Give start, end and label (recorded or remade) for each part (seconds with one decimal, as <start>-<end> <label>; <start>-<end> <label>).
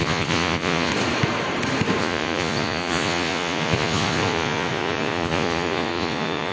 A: 0.0-0.9 remade; 0.9-2.0 recorded; 2.0-6.5 remade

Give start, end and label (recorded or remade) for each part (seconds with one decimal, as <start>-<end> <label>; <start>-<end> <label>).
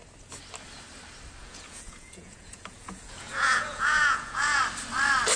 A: 0.0-1.4 recorded; 1.4-4.6 remade; 4.6-5.4 recorded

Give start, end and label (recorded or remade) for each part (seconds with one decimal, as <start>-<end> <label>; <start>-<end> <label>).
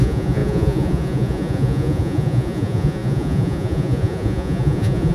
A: 0.0-5.1 remade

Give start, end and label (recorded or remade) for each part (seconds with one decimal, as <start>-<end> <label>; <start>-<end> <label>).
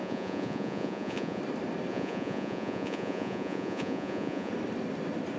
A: 0.0-1.4 remade; 1.4-1.9 recorded; 1.9-4.5 remade; 4.5-5.4 recorded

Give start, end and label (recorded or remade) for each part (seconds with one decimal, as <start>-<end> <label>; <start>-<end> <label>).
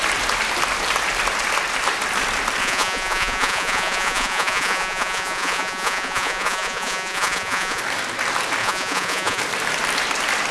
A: 0.0-2.6 recorded; 2.6-7.8 remade; 7.8-8.6 recorded; 8.6-9.4 remade; 9.4-10.5 recorded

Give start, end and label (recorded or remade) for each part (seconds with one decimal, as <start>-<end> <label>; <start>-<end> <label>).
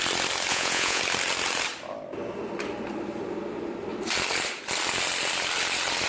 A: 0.0-0.5 recorded; 0.5-1.0 remade; 1.0-6.1 recorded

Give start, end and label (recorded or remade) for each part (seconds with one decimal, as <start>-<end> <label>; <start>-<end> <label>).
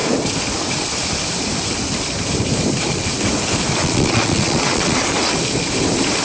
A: 0.0-3.8 recorded; 3.8-5.0 remade; 5.0-6.2 recorded